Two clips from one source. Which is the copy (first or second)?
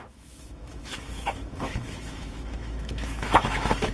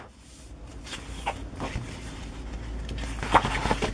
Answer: first